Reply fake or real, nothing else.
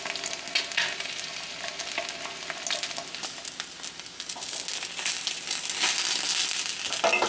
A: real